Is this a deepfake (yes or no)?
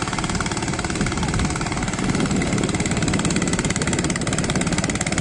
yes